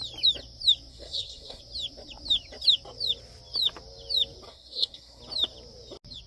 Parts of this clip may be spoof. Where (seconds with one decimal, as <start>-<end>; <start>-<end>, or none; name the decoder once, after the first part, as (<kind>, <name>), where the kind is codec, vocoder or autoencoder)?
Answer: 0.9-1.6 (codec, SNAC); 4.5-5.2